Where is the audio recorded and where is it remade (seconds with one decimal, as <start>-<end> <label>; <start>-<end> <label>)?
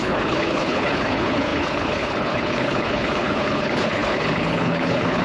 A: 0.0-5.2 remade